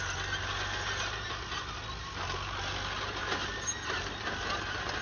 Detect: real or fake real